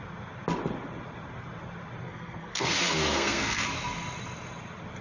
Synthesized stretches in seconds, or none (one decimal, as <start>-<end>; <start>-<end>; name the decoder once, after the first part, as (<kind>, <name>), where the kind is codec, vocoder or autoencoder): 2.0-3.6 (codec, SNAC)